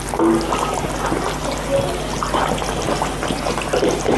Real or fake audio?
real